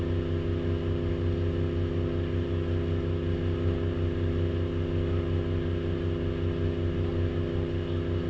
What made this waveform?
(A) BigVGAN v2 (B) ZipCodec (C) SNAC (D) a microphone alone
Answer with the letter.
D